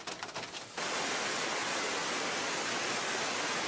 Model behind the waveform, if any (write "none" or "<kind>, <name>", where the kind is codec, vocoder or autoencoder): none